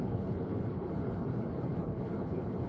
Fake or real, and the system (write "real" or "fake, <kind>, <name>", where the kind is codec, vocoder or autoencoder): fake, codec, HILCodec